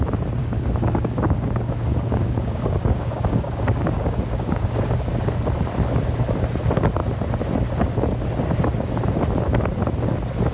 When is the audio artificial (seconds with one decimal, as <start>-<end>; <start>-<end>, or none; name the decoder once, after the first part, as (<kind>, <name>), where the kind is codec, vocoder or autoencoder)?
0.4-4.8 (codec, DAC)